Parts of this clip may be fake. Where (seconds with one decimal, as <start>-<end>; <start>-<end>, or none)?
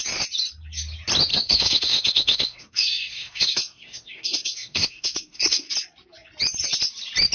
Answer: 1.3-5.7